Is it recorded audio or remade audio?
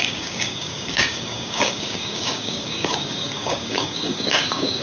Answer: remade